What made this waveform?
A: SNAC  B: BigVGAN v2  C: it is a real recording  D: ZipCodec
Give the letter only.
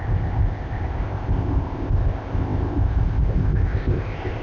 D